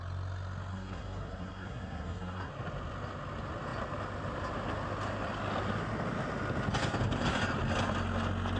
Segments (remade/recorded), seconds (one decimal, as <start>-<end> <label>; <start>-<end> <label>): 0.0-0.7 recorded; 0.7-2.5 remade; 2.5-8.6 recorded